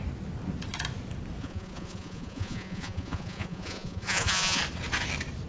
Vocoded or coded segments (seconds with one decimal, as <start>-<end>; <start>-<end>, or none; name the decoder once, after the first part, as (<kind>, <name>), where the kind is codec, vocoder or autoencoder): 1.4-4.6 (vocoder, Vocos)